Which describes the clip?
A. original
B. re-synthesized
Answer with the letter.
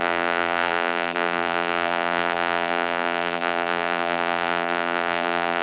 B